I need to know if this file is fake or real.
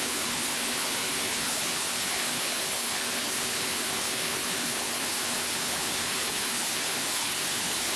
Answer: fake